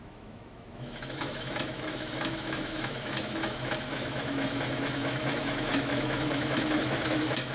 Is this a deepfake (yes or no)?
yes